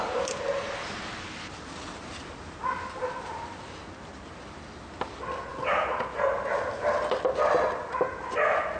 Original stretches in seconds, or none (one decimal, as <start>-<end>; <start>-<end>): 0.0-8.8